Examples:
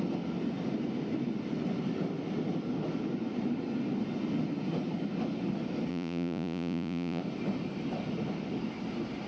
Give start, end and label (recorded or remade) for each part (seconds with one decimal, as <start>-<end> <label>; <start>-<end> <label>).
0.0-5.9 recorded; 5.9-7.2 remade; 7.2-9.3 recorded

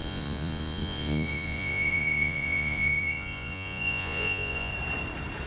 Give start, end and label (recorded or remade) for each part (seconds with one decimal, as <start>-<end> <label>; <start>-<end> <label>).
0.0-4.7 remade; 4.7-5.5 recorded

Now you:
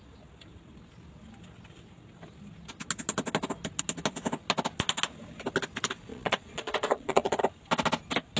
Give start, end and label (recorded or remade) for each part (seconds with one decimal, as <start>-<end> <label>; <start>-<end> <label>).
0.0-6.1 recorded; 6.1-7.4 remade; 7.4-8.4 recorded

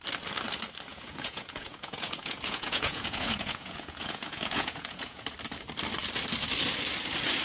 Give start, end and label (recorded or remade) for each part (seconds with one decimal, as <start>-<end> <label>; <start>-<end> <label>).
0.0-0.9 recorded; 0.9-5.2 remade; 5.2-7.4 recorded

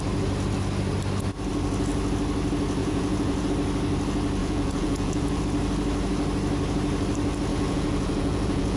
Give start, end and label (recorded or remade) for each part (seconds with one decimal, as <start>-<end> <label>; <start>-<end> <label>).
0.0-2.8 recorded; 2.8-3.5 remade; 3.5-4.4 recorded; 4.4-5.4 remade; 5.4-7.5 recorded; 7.5-8.8 remade

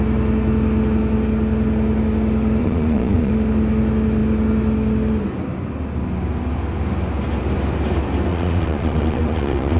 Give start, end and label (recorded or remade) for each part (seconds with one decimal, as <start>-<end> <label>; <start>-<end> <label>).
0.0-2.6 recorded; 2.6-3.3 remade; 3.3-8.3 recorded; 8.3-9.8 remade